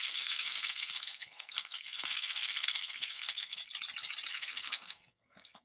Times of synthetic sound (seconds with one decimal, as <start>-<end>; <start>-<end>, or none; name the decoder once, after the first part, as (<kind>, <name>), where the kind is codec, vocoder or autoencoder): 0.0-3.6 (codec, SNAC); 4.3-5.6